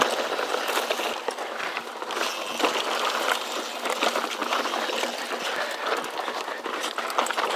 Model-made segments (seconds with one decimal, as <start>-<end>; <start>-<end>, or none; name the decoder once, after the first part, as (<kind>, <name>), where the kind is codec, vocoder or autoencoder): none